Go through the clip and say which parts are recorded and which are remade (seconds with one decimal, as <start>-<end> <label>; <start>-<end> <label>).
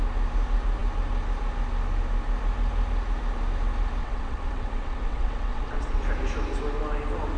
0.0-4.0 recorded; 4.0-6.0 remade; 6.0-7.4 recorded